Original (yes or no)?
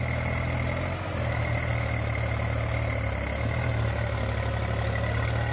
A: yes